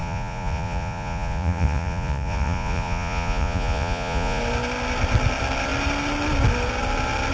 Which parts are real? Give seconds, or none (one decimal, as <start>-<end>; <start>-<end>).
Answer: 4.4-7.3